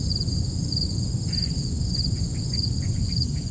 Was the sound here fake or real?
fake